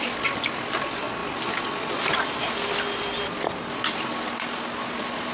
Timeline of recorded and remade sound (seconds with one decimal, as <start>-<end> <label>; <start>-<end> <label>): 0.0-5.3 recorded